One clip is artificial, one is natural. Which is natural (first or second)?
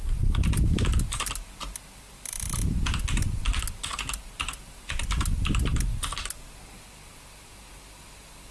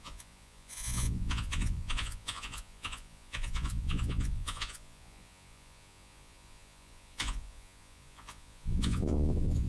first